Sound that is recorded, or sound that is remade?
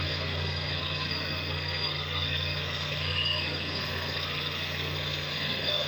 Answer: remade